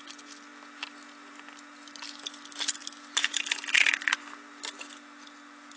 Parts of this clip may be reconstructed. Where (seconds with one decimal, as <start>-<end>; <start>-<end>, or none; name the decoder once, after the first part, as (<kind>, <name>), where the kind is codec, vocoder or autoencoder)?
none